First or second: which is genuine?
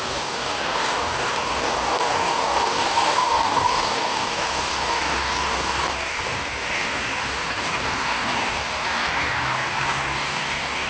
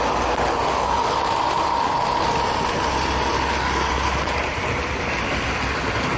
second